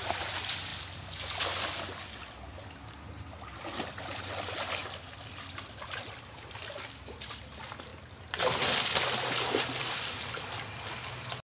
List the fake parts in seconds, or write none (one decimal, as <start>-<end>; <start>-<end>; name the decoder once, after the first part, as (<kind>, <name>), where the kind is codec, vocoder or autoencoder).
4.8-7.4 (vocoder, BigVGAN v2)